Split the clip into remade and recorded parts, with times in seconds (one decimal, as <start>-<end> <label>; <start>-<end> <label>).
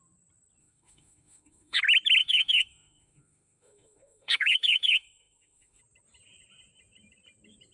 0.0-0.6 recorded; 0.6-1.8 remade; 1.8-2.2 recorded; 2.2-5.8 remade; 5.8-7.7 recorded